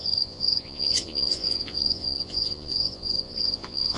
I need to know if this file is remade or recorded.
remade